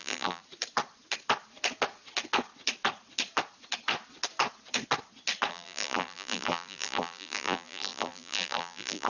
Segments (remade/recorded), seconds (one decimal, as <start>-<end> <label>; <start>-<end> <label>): 0.0-0.4 remade; 0.4-5.5 recorded; 5.5-9.1 remade